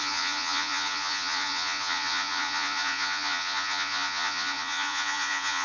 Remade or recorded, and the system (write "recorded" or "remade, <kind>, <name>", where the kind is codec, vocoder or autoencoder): remade, vocoder, Vocos